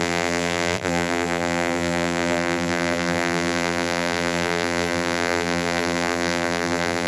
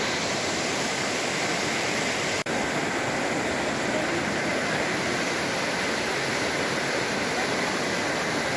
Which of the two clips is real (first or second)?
second